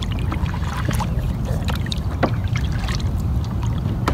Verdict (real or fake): real